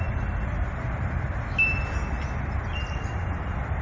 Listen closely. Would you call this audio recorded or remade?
recorded